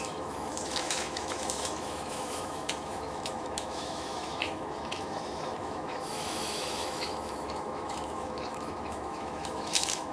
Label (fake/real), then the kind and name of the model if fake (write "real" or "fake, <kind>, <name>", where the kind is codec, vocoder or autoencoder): fake, autoencoder, DAC-VAE